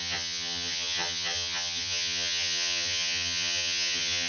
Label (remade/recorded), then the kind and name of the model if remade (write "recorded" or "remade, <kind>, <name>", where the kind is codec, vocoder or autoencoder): remade, vocoder, HiFi-GAN